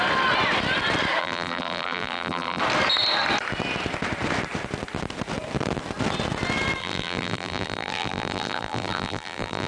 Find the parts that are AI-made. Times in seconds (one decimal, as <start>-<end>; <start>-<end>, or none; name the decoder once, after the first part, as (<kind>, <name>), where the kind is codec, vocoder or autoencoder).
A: 1.2-2.6 (vocoder, BigVGAN v2); 6.8-9.7